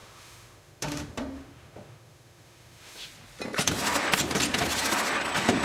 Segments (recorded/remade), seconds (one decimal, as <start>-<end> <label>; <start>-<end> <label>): 0.0-3.1 remade; 3.1-5.6 recorded